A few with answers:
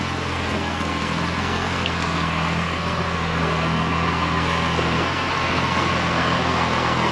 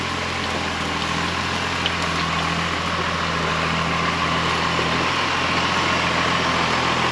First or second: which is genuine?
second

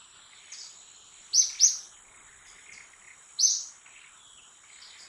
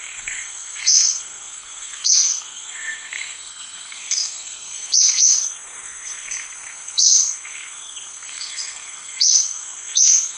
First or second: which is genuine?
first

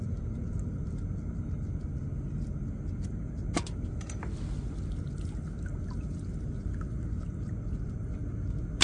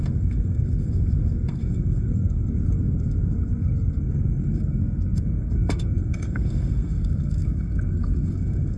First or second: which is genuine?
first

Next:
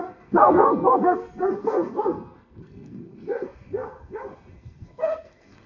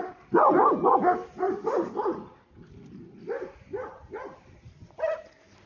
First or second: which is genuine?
second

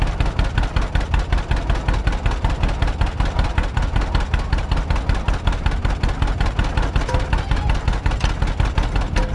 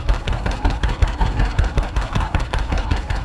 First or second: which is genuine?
first